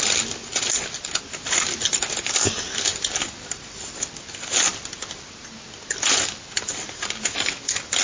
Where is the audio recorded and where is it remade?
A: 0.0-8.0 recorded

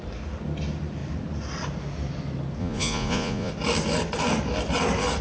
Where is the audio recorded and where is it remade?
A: 0.0-2.6 recorded; 2.6-3.5 remade; 3.5-5.2 recorded

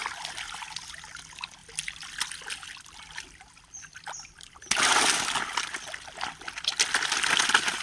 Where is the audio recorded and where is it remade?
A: 0.0-0.8 remade; 0.8-7.8 recorded

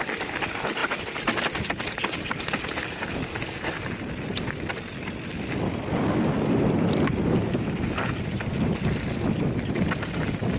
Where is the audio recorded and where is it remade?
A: 0.0-10.6 recorded